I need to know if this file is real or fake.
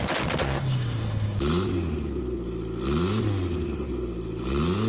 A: real